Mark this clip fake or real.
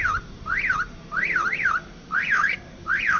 fake